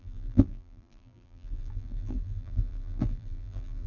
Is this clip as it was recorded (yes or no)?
no